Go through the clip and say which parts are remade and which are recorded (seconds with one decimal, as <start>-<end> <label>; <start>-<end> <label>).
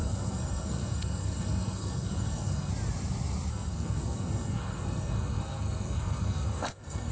0.0-2.7 remade; 2.7-3.5 recorded; 3.5-7.1 remade